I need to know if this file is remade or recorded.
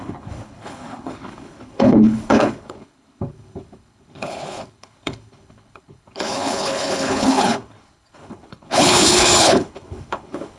remade